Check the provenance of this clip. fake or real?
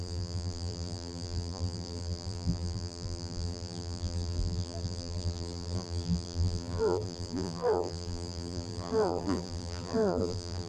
fake